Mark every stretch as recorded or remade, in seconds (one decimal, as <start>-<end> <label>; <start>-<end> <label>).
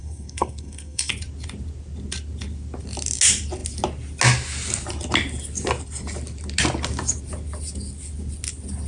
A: 0.0-1.1 remade; 1.1-8.9 recorded